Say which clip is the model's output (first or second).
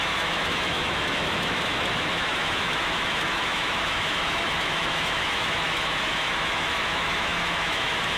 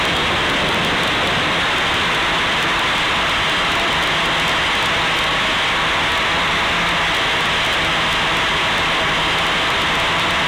first